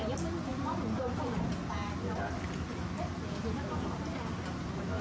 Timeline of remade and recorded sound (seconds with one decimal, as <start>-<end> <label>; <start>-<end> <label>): 0.0-0.5 recorded; 0.5-1.0 remade; 1.0-1.8 recorded; 1.8-3.2 remade; 3.2-5.0 recorded